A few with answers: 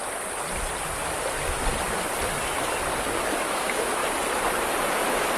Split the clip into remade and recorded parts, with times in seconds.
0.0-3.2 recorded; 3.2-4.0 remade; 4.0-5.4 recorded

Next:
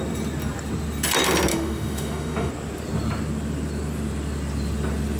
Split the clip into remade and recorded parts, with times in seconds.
0.0-1.5 recorded; 1.5-2.5 remade; 2.5-5.2 recorded

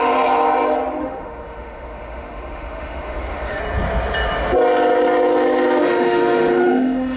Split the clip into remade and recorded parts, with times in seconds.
0.0-1.0 recorded; 1.0-3.6 remade; 3.6-5.8 recorded; 5.8-7.2 remade

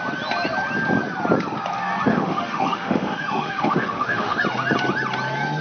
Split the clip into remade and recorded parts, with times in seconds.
0.0-2.1 recorded; 2.1-4.4 remade; 4.4-5.6 recorded

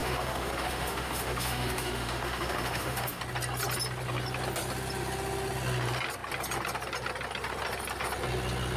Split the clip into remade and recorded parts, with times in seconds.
0.0-3.2 remade; 3.2-8.8 recorded

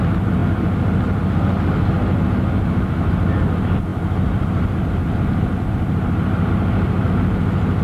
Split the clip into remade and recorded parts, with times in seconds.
0.0-7.8 recorded

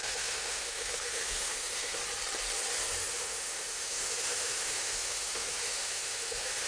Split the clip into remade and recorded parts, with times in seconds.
0.0-2.0 remade; 2.0-3.1 recorded; 3.1-6.7 remade